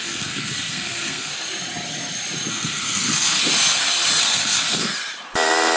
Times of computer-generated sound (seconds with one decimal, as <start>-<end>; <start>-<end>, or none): 0.0-1.3; 2.5-3.4; 4.2-4.9

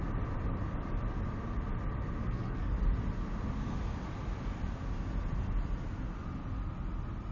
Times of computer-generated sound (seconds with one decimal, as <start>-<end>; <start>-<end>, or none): 2.2-2.7

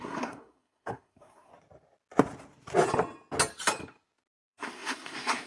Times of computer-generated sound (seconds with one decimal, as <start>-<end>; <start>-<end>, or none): 0.0-1.5; 4.3-5.5

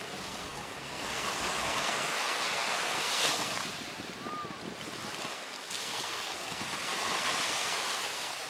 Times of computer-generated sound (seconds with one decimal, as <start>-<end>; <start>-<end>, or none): 0.0-3.6; 5.2-8.5

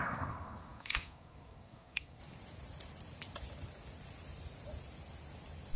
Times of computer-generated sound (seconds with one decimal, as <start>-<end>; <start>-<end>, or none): 0.0-2.2

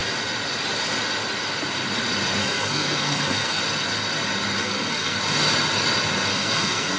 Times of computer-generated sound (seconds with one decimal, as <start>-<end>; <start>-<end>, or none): 2.4-3.6; 4.6-5.2; 6.3-7.0